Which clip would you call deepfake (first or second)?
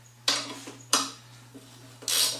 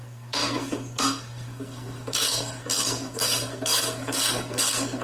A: second